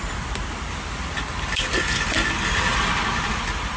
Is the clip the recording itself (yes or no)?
yes